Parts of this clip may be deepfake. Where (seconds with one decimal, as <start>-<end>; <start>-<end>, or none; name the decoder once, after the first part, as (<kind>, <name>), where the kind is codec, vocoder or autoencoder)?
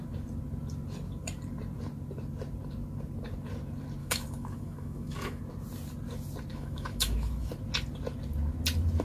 4.0-5.4 (autoencoder, DAC-VAE); 6.5-7.5